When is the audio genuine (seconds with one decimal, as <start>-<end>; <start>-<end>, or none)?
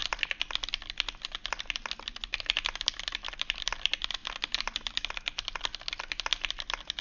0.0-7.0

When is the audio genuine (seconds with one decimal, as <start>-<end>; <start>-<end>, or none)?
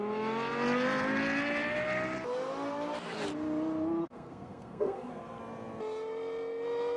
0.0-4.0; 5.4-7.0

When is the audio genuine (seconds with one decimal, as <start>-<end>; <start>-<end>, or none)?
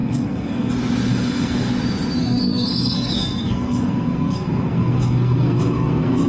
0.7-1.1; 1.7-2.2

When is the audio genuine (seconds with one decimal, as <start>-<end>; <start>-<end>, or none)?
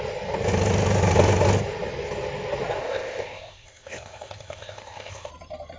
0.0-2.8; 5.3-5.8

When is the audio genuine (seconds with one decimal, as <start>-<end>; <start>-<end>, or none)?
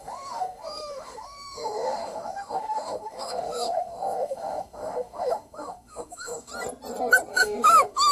6.5-7.3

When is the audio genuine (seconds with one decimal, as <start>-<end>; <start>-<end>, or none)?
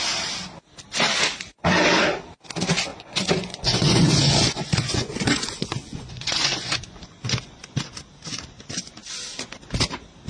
0.0-2.9; 7.8-10.3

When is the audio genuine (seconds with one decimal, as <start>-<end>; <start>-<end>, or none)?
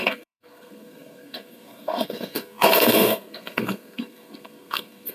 none